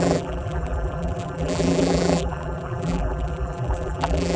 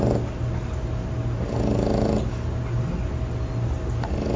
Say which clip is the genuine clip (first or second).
second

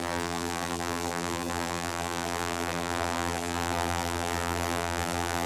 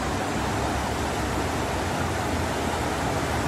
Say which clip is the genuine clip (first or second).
second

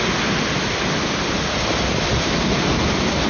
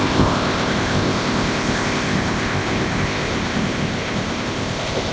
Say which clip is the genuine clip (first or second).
first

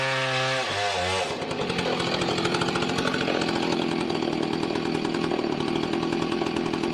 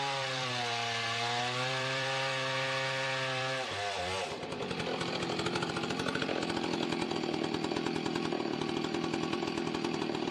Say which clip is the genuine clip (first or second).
first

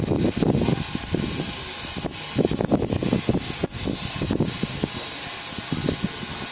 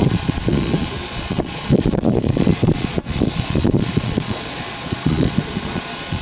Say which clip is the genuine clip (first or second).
first